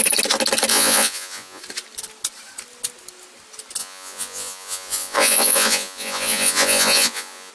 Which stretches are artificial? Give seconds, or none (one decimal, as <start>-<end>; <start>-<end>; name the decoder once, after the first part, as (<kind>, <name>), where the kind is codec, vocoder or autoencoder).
0.7-1.6 (vocoder, Vocos); 3.8-7.5

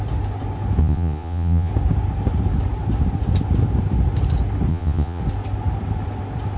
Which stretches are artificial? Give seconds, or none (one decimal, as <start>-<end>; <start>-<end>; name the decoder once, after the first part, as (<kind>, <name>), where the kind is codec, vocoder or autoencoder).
0.8-1.7 (vocoder, Vocos); 4.7-5.2

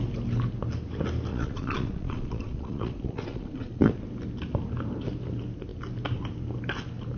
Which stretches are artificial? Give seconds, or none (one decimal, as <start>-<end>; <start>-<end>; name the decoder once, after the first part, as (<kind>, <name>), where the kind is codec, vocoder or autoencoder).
1.3-3.9 (vocoder, Vocos)

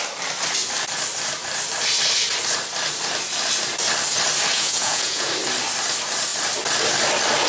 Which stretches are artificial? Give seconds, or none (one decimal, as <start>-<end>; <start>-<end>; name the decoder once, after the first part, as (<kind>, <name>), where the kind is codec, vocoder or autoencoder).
4.5-5.3 (vocoder, Vocos)